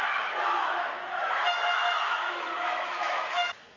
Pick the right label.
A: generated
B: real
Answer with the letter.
A